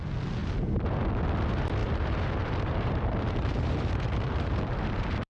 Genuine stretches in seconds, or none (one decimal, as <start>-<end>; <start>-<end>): 0.0-1.8